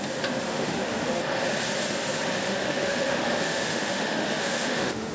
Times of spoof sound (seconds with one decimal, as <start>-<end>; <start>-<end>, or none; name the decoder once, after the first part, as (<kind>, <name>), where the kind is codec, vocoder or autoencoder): 0.5-1.2 (autoencoder, DAC-VAE); 2.4-5.1